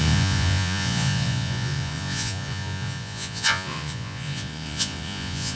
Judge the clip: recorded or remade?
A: remade